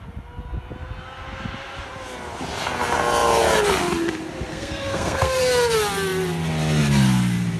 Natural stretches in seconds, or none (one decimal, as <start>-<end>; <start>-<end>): 0.0-4.5; 5.4-7.6